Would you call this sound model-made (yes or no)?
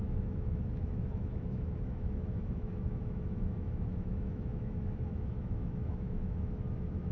yes